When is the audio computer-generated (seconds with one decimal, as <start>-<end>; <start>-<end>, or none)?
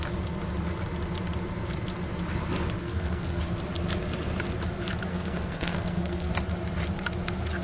2.8-3.4; 5.1-6.3